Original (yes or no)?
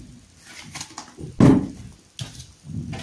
yes